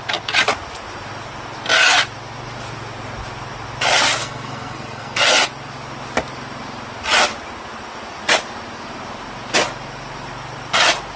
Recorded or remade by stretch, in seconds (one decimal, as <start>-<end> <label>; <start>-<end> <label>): 0.0-4.2 recorded; 4.2-5.2 remade; 5.2-11.2 recorded